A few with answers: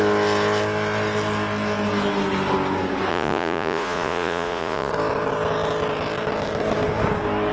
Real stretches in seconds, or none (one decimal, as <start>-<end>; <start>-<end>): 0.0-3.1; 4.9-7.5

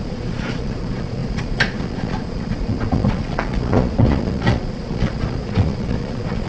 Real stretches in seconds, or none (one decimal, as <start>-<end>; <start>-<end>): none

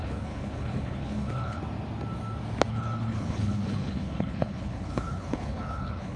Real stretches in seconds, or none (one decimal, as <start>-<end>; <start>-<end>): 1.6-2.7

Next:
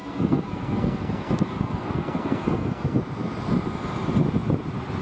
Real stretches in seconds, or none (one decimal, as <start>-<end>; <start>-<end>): 3.0-5.0

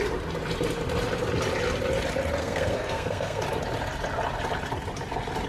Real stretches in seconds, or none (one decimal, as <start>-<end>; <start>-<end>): 0.0-2.4; 3.4-5.5

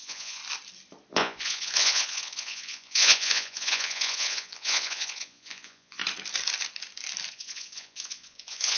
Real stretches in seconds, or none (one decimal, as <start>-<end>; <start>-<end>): 0.4-1.1; 6.0-7.3

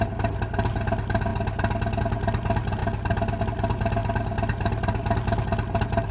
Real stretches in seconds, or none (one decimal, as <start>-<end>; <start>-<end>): 0.0-6.1

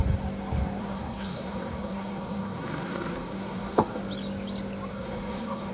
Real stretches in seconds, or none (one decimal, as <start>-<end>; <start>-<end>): 0.0-0.8; 4.0-4.9